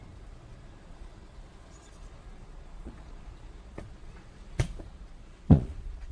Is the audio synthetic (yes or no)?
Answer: yes